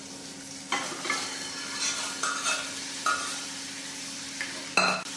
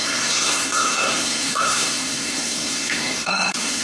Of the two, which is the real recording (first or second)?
first